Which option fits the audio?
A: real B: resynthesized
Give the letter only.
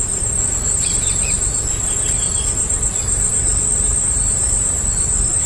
A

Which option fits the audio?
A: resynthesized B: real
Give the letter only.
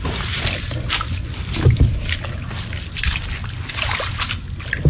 B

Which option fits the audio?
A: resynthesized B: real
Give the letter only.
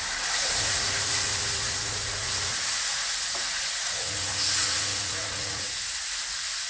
A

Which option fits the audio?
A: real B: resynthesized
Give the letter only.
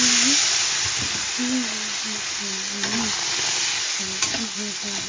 A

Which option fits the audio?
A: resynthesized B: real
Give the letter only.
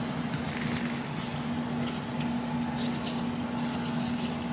B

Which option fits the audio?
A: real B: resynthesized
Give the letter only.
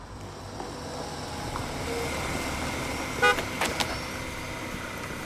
A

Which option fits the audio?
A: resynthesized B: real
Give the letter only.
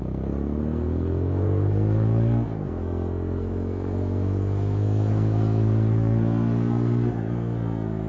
A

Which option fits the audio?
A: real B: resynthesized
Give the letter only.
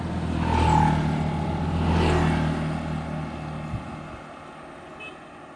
A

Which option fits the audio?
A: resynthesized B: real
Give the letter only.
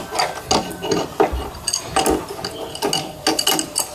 B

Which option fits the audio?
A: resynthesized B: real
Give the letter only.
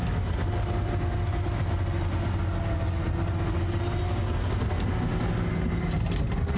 B